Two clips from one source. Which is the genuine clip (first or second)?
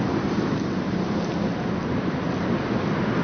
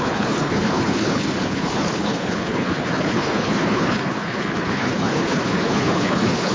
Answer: first